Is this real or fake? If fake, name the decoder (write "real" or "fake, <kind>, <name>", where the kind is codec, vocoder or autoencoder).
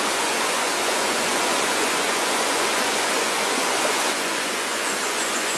fake, vocoder, Vocos